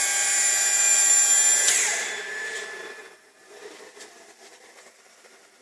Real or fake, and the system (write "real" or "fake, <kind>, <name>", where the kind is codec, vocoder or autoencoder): fake, vocoder, BigVGAN v2